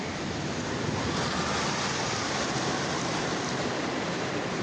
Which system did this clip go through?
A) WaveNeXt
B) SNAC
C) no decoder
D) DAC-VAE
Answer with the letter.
C